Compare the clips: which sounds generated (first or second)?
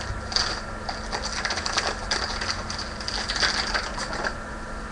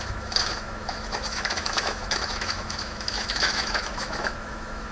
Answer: second